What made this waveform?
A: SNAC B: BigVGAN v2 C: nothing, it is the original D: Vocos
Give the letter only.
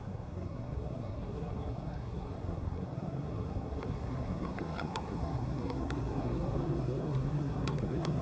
A